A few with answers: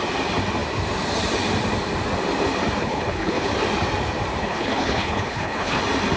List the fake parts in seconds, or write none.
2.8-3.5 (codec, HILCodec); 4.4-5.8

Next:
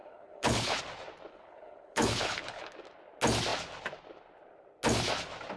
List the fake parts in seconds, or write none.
0.0-0.8 (codec, HILCodec); 1.3-2.6